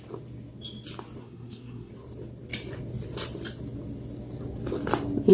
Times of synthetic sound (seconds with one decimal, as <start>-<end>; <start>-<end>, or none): 1.2-1.9